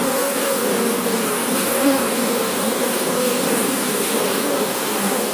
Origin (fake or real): fake